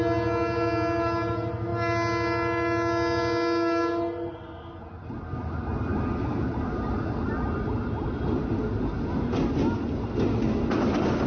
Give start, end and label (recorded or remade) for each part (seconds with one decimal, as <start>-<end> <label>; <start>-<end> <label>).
0.0-11.3 recorded